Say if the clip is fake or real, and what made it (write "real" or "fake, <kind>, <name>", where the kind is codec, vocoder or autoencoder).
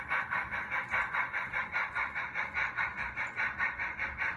fake, vocoder, Vocos